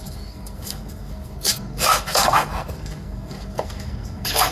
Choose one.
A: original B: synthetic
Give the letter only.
B